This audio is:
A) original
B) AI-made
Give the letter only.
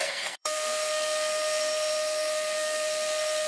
B